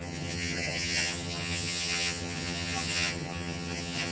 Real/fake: fake